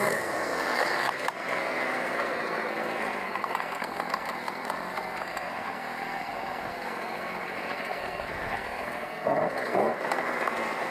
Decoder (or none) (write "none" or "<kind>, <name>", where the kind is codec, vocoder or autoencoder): codec, SNAC